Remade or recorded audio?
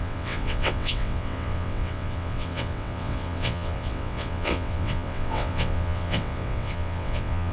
remade